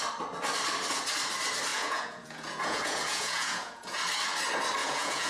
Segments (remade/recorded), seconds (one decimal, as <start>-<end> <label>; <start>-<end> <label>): 0.0-1.7 recorded; 1.7-4.0 remade; 4.0-4.8 recorded; 4.8-5.3 remade